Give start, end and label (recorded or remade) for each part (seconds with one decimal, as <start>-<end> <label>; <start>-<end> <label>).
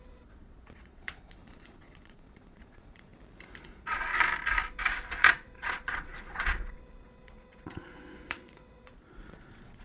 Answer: 0.0-3.1 remade; 3.1-3.6 recorded; 3.6-4.1 remade; 4.1-5.1 recorded; 5.1-9.8 remade